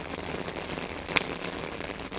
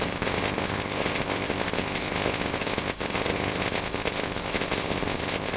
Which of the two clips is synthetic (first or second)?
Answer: second